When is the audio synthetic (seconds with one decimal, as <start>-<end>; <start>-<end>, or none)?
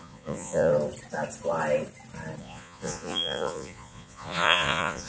0.0-0.7; 2.4-5.1